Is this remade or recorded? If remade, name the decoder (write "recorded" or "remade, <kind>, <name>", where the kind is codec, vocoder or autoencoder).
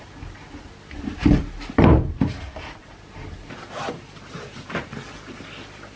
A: remade, vocoder, BigVGAN v2